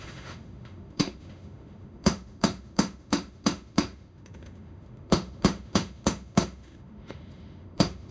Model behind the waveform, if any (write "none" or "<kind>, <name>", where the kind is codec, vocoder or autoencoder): autoencoder, DAC-VAE